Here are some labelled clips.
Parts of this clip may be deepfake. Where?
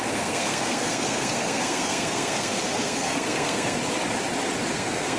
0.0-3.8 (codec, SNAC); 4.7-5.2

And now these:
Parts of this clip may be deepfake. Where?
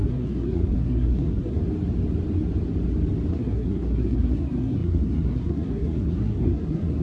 0.0-1.6 (codec, SNAC); 3.3-7.0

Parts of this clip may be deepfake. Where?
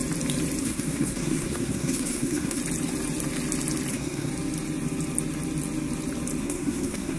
0.6-2.6 (codec, SNAC); 3.9-4.3; 6.4-7.2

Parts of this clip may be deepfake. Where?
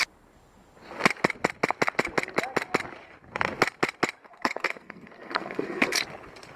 4.2-6.0 (codec, SNAC)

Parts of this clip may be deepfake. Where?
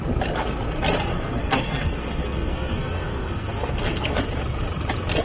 1.1-4.2 (codec, SNAC)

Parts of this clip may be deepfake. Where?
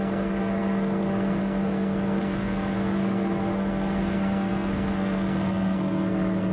0.0-6.5 (codec, SNAC)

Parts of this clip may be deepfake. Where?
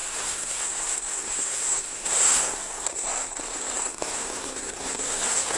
0.0-5.6 (codec, SNAC)